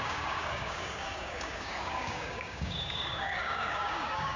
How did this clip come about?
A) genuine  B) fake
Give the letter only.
B